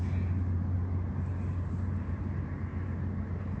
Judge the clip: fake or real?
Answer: real